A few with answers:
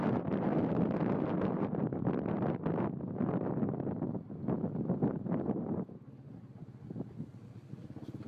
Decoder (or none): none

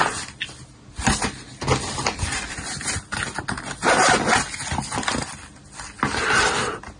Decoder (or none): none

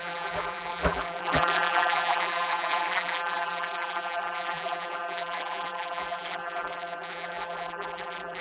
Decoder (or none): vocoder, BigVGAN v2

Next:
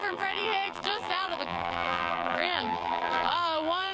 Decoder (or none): vocoder, BigVGAN v2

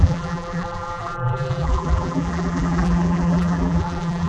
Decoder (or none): vocoder, BigVGAN v2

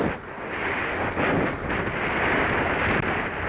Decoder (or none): none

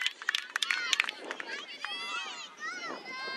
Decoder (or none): none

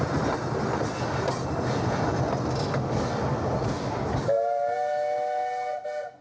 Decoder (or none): none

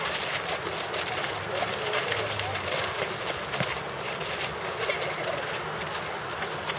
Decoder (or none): none